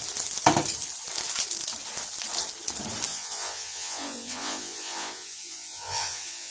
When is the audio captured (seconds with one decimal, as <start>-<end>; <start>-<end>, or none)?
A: 0.0-3.1